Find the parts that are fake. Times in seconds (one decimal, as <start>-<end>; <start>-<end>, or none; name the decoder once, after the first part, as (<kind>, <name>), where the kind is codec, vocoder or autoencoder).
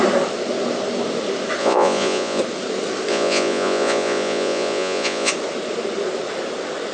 1.6-2.4 (vocoder, Vocos); 3.1-5.3